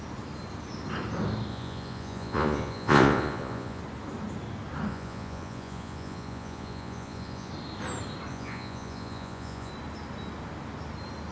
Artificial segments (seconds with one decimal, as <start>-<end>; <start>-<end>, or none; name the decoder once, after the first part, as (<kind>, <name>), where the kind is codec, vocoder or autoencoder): 1.5-3.8 (vocoder, Vocos); 4.9-7.5; 8.3-9.7